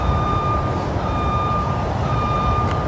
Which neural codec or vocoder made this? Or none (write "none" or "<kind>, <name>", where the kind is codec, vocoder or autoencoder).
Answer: vocoder, BigVGAN v2